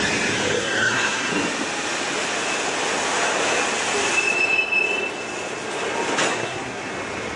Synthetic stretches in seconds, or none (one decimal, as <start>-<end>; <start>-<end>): 0.5-1.3; 6.3-6.9